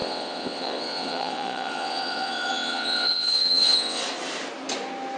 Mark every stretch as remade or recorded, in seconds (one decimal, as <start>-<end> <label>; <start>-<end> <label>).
0.0-4.0 remade; 4.0-5.2 recorded